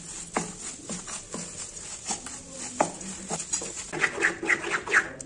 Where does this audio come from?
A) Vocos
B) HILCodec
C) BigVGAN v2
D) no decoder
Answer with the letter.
D